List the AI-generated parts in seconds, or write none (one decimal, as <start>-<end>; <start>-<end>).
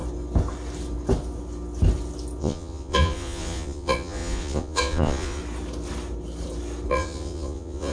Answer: 2.4-5.4; 6.9-7.9